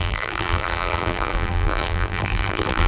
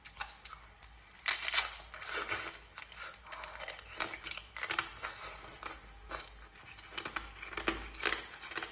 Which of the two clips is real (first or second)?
second